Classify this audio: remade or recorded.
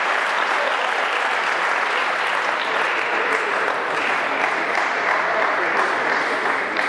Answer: remade